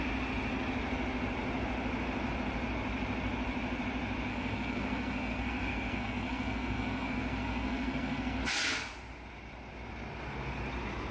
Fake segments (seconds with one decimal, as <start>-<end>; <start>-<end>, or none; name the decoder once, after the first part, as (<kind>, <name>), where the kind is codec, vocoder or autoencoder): 4.3-8.4 (codec, SNAC)